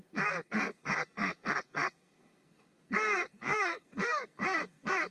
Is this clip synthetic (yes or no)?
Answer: yes